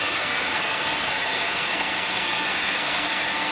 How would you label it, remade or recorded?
remade